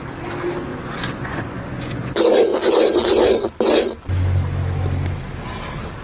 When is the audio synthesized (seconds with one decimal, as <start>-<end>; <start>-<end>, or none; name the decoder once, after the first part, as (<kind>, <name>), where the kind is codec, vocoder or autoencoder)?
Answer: 0.7-2.1 (vocoder, Vocos)

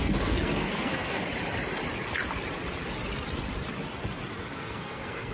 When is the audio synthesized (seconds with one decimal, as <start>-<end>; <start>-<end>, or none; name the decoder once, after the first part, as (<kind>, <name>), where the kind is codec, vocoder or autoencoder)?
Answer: 0.0-1.2 (codec, SNAC); 4.4-5.3

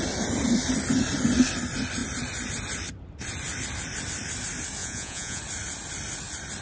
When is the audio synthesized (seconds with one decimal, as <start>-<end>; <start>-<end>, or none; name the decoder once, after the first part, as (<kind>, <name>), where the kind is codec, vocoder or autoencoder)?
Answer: 4.8-5.4 (vocoder, Vocos)

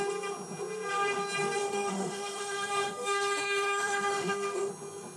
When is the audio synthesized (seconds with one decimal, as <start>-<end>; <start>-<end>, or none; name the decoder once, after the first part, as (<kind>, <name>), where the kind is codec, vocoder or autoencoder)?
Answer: 1.6-4.7 (autoencoder, DAC-VAE)